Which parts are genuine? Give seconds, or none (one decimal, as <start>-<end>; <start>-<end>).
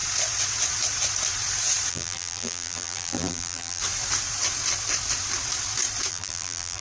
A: 0.0-1.9; 3.8-6.1